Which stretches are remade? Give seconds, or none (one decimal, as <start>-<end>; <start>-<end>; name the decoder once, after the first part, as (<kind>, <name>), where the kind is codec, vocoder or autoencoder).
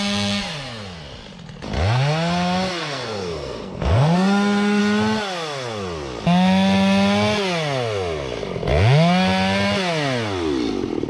2.8-4.8 (codec, SNAC)